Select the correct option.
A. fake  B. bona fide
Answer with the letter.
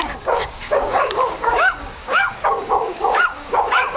A